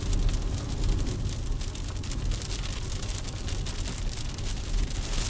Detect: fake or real real